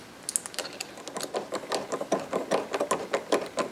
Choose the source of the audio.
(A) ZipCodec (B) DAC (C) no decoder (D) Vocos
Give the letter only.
C